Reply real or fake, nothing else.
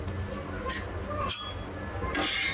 real